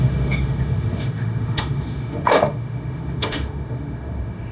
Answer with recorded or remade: remade